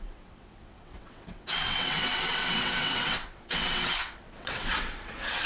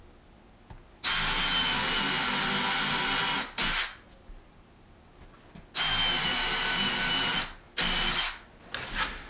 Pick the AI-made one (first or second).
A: first